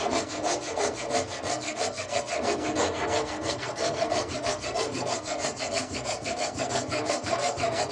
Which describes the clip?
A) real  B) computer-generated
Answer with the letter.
B